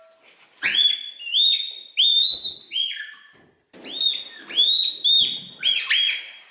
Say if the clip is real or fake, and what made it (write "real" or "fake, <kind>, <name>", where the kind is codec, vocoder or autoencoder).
real